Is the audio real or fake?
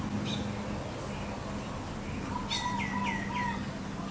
real